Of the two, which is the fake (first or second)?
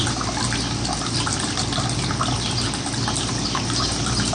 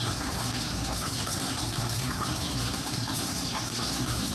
second